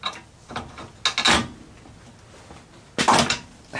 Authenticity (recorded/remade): recorded